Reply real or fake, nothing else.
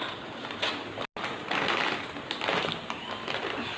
real